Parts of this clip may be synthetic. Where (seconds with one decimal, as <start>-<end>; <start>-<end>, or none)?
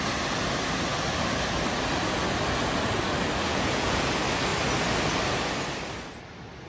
3.5-4.1